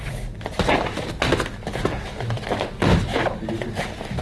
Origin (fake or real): real